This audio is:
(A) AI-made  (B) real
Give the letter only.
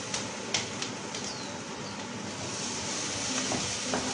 B